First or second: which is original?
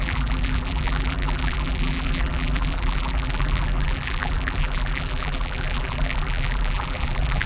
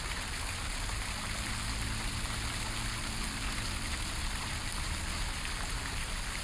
second